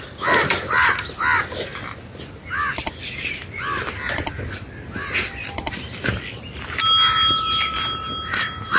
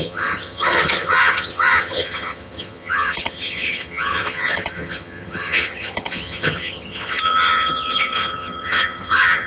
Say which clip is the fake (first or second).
second